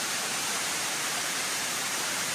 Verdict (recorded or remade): remade